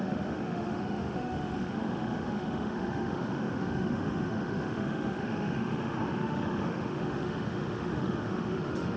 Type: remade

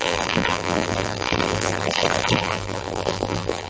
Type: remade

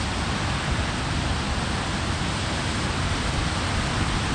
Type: recorded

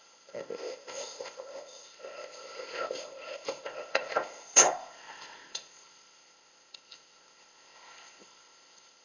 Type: remade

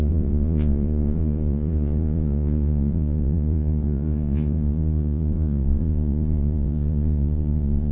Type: remade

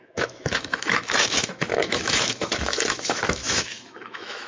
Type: remade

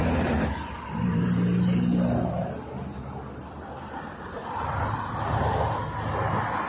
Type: recorded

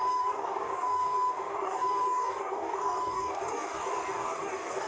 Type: remade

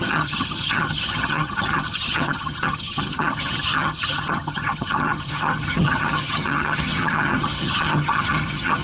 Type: remade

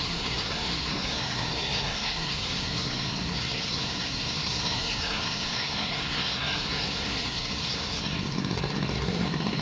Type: remade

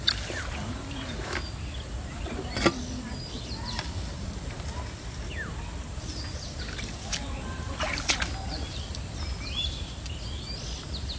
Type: recorded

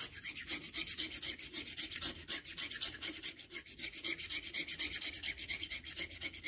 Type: recorded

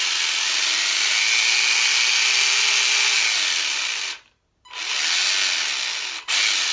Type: recorded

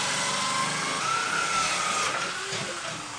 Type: recorded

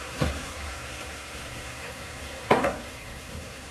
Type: remade